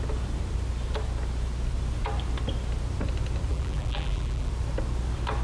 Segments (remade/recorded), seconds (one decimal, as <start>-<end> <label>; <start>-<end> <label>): 0.0-3.5 recorded; 3.5-4.5 remade; 4.5-5.4 recorded